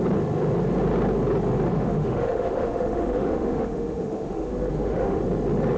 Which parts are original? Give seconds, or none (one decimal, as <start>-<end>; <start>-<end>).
0.0-1.7; 5.2-5.8